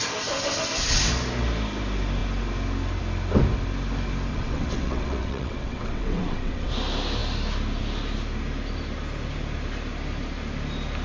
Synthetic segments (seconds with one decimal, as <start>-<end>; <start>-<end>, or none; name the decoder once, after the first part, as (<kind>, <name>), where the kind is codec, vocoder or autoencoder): 4.3-6.7 (vocoder, WaveNeXt)